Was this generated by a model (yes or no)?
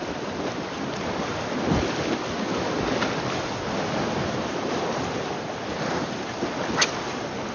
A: no